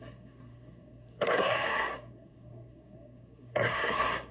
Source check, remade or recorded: remade